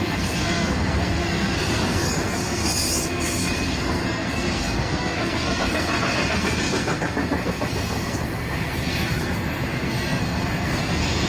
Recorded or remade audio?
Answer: remade